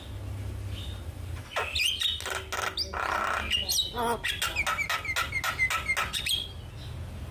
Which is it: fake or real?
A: real